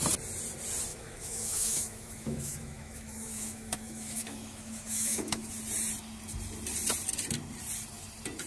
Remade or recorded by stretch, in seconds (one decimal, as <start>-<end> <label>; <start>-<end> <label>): 0.0-0.9 recorded; 0.9-5.5 remade; 5.5-8.5 recorded